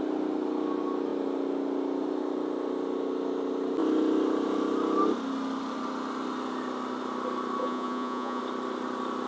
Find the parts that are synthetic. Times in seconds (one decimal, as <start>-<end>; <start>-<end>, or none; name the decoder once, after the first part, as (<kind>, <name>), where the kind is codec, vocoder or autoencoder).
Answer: 7.6-8.4 (vocoder, Vocos)